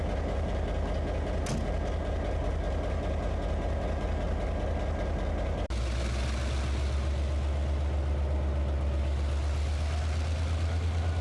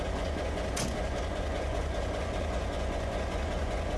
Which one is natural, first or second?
first